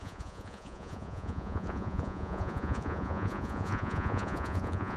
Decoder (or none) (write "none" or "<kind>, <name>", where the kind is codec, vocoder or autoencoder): vocoder, Vocos